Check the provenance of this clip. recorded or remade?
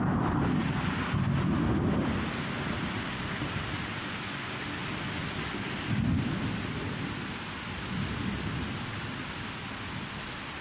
recorded